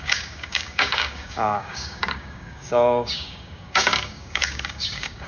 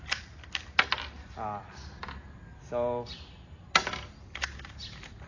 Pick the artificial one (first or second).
first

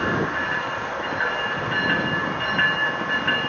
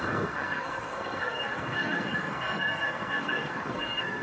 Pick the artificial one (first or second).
second